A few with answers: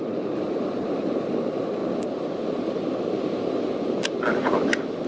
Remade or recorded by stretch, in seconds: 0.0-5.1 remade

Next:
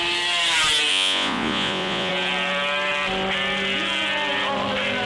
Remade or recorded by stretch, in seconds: 0.0-0.9 recorded; 0.9-2.1 remade; 2.1-5.1 recorded